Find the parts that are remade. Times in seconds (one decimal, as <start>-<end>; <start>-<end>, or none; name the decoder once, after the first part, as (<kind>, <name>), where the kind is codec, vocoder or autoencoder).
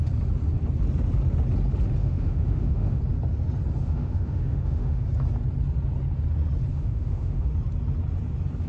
2.0-3.0 (autoencoder, DAC-VAE); 3.8-5.0; 6.7-7.5